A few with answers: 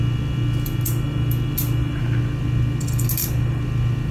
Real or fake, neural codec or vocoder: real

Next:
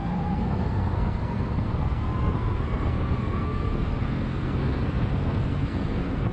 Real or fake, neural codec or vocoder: fake, codec, SNAC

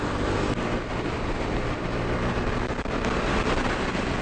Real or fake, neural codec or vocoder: real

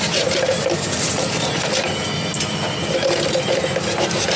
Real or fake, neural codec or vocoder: real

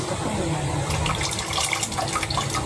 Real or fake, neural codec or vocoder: real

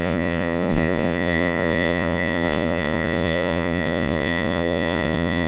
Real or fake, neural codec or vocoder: fake, vocoder, Vocos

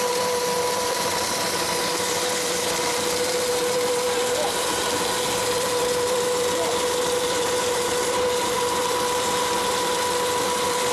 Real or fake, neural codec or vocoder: fake, vocoder, BigVGAN v2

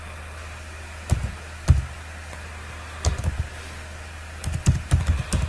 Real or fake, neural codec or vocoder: real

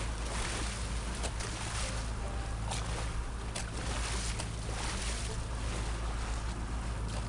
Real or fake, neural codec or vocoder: real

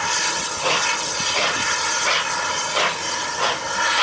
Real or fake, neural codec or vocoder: real